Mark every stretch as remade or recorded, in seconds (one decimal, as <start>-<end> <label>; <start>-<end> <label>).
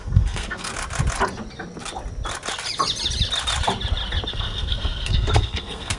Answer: 0.0-0.7 remade; 0.7-4.3 recorded; 4.3-6.0 remade